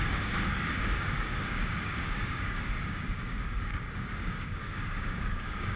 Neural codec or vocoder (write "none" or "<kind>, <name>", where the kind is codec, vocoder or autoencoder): codec, DAC